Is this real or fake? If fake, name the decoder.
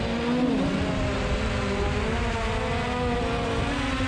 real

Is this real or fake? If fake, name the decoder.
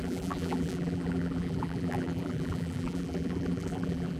fake, vocoder, BigVGAN v2